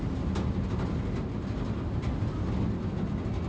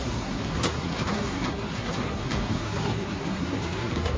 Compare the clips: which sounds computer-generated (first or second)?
second